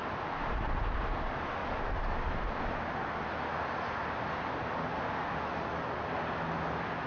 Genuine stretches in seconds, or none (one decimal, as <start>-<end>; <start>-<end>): 0.0-0.4; 1.1-1.6; 2.6-7.1